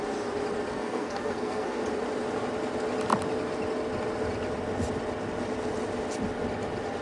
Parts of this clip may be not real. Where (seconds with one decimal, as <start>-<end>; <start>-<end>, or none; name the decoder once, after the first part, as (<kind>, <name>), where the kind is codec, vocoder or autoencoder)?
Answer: 0.7-1.8 (codec, SNAC)